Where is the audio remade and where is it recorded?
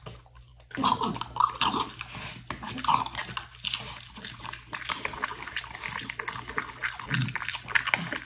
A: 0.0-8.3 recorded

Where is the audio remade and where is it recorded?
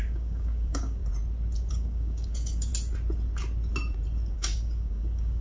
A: 0.0-1.0 remade; 1.0-1.7 recorded; 1.7-2.7 remade; 2.7-4.3 recorded; 4.3-5.4 remade